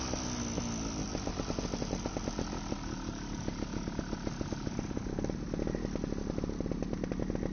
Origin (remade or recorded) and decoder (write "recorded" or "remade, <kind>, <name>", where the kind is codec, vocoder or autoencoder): recorded